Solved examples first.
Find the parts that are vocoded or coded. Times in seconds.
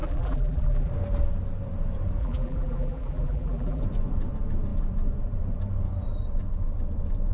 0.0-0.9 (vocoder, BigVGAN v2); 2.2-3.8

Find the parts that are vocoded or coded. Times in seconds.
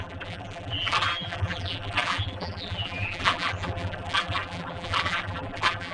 0.0-5.9 (vocoder, BigVGAN v2)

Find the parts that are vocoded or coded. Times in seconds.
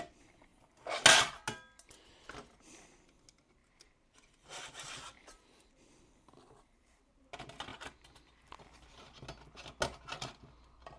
3.6-7.2 (vocoder, BigVGAN v2)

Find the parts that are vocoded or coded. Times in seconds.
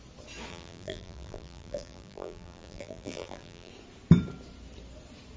0.5-3.7 (vocoder, BigVGAN v2)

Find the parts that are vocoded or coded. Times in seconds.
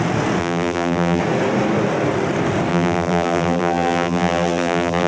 0.4-1.2 (vocoder, BigVGAN v2); 2.7-5.1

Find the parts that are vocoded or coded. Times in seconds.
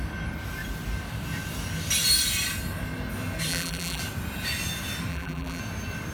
3.5-4.0 (vocoder, BigVGAN v2); 5.1-5.6